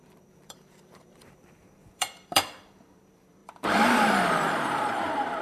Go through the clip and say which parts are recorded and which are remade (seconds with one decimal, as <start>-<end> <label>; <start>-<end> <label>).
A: 0.0-5.4 remade